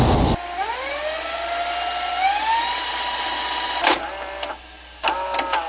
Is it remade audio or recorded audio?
recorded